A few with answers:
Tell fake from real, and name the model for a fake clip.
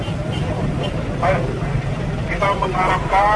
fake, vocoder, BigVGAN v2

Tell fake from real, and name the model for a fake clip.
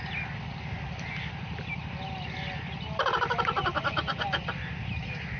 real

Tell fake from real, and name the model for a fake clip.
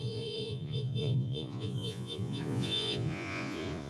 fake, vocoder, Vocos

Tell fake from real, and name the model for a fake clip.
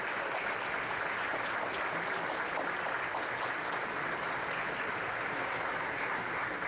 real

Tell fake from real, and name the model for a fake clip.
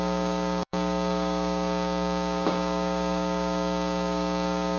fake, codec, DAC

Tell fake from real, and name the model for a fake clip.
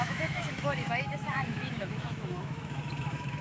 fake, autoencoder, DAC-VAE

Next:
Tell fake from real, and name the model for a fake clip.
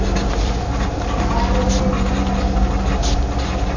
real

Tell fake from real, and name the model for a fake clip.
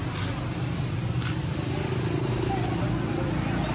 real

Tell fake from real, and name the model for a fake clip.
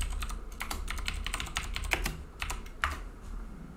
real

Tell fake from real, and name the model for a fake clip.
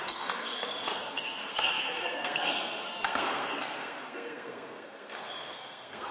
fake, codec, SNAC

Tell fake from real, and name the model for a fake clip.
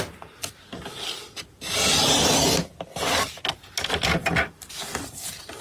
real